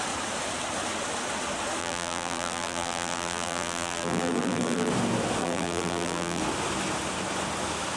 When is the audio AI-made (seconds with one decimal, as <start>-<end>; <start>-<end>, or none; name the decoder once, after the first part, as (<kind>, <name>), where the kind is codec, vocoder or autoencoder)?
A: 1.8-4.9 (vocoder, BigVGAN v2); 5.4-6.4